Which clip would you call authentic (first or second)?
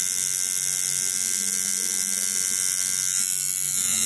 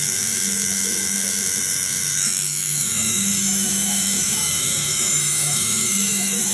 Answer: first